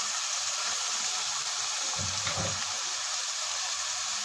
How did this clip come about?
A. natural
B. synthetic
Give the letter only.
B